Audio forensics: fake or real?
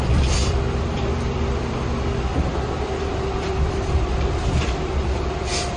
fake